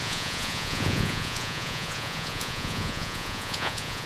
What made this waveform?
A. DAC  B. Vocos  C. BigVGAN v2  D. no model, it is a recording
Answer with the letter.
B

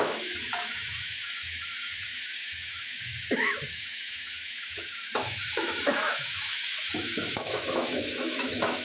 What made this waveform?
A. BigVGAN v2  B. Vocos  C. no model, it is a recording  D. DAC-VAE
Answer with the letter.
D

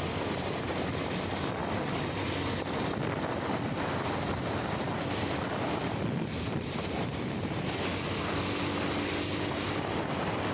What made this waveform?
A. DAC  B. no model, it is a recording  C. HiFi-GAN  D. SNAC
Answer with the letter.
B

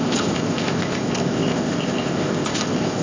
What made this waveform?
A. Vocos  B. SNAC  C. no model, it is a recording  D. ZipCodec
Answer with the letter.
D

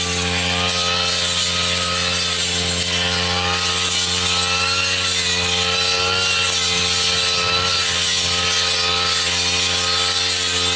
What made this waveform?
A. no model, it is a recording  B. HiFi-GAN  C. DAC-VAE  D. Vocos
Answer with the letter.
A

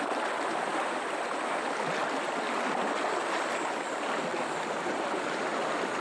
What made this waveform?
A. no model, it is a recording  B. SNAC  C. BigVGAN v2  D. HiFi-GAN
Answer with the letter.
A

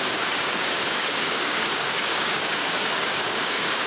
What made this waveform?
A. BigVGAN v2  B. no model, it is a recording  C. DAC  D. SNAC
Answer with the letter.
C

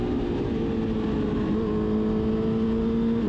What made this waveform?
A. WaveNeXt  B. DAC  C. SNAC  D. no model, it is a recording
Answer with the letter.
D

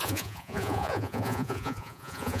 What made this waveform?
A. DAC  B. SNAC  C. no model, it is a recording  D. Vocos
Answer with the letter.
D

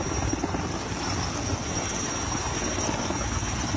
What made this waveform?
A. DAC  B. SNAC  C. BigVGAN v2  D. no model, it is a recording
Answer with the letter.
D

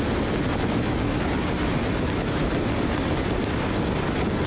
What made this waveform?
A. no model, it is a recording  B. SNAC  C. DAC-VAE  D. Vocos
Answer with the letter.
A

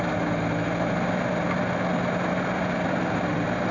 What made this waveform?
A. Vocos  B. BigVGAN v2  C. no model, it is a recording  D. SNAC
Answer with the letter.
C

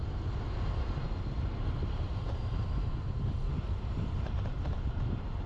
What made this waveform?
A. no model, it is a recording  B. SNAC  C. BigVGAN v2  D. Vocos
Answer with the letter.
C